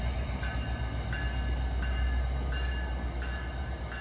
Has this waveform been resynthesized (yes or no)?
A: no